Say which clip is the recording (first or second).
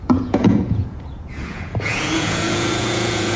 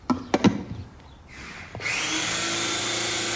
second